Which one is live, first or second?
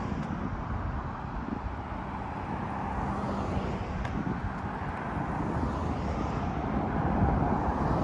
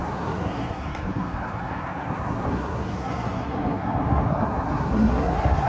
first